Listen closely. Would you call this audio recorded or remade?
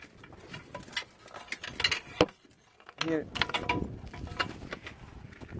recorded